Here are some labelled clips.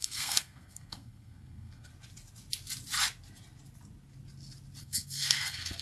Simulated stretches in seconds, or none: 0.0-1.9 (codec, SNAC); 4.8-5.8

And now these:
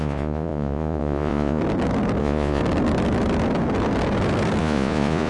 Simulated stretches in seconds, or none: 0.0-1.6 (vocoder, Vocos); 2.2-2.6; 4.6-5.3

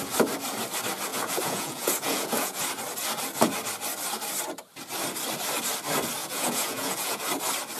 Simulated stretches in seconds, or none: 1.1-2.6 (vocoder, Vocos); 6.2-7.2

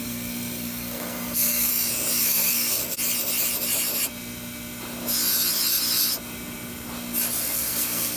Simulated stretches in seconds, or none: 0.0-1.7 (codec, SNAC); 2.2-2.8; 7.4-8.2

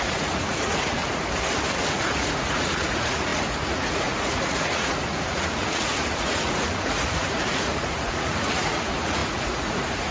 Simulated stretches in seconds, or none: 0.0-1.0 (vocoder, Vocos); 1.9-10.1

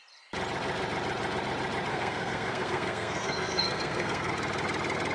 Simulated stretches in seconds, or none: 1.9-4.3 (codec, SNAC)

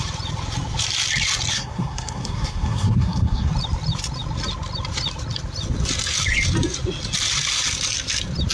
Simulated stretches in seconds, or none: 1.5-3.5 (codec, SNAC)

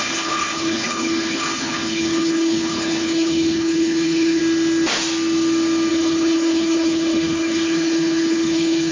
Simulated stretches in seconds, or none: 0.0-4.4 (codec, HILCodec); 5.9-8.9